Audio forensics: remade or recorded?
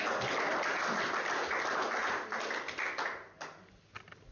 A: recorded